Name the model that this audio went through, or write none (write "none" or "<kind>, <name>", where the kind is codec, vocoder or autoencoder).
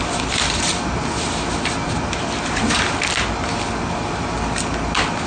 none